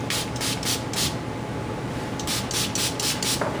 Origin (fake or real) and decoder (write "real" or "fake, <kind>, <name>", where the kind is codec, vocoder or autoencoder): real